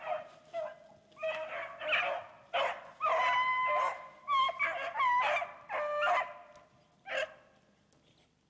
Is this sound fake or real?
real